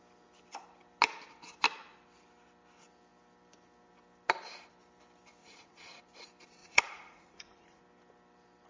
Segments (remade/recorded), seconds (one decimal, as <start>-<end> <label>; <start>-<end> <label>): 0.0-5.4 recorded; 5.4-6.0 remade; 6.0-6.6 recorded; 6.6-7.8 remade; 7.8-8.7 recorded